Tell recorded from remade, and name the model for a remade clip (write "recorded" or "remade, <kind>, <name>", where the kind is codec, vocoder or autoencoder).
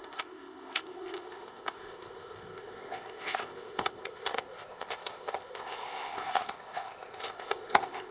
remade, codec, ZipCodec